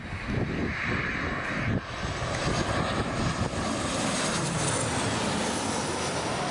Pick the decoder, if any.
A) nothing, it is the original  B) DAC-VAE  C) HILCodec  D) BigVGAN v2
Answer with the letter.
A